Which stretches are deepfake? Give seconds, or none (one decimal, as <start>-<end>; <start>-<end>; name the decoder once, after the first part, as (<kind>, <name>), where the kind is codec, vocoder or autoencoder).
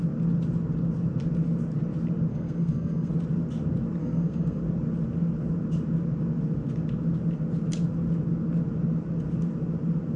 2.3-3.1 (codec, SNAC); 4.0-4.6